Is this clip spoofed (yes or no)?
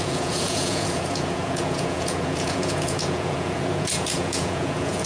yes